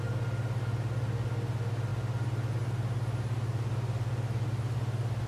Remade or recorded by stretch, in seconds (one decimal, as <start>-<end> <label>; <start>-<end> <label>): 0.0-5.3 recorded